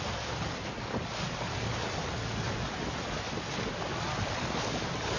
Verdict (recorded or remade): recorded